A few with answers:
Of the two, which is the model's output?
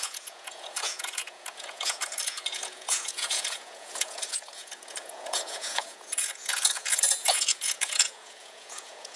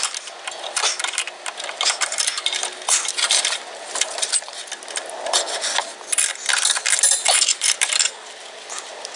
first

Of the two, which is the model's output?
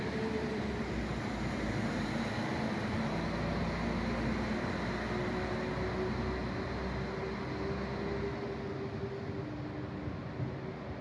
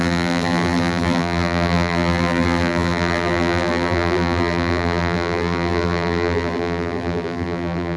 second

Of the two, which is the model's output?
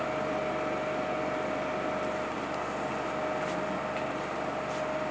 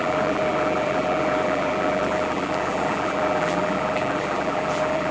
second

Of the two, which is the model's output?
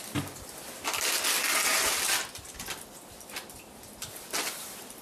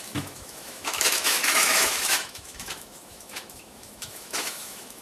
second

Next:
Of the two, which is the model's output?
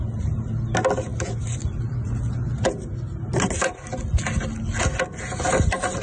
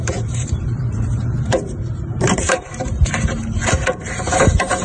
second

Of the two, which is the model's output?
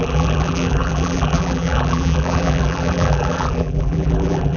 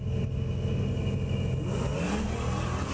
first